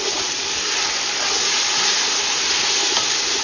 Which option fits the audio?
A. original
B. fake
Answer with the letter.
A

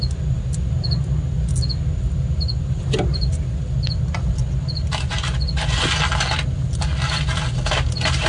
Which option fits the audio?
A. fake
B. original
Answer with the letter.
B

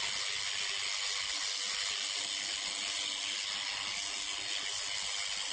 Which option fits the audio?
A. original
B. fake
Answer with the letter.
A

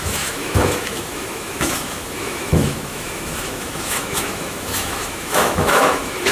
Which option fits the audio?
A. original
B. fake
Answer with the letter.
B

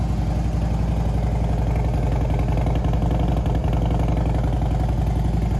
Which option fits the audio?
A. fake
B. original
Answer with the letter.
B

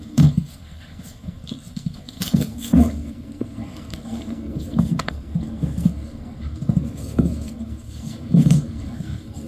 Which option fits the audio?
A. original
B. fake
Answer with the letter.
B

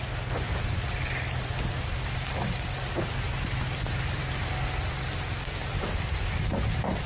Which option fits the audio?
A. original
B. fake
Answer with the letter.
A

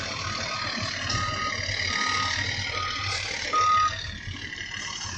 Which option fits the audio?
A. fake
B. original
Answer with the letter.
B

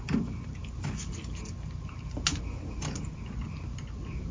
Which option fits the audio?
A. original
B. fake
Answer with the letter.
A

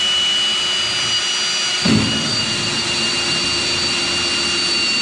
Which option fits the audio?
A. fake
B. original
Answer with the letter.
B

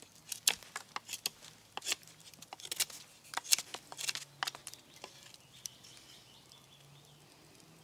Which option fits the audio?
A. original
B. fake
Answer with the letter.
A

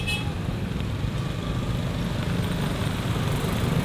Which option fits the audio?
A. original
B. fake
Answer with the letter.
A